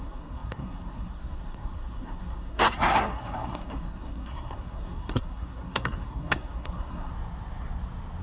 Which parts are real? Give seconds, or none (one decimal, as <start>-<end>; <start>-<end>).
7.1-8.2